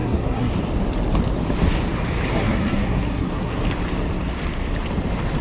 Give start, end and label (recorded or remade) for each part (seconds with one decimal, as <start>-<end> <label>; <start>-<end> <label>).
0.0-0.5 remade; 0.5-2.3 recorded; 2.3-3.6 remade; 3.6-5.4 recorded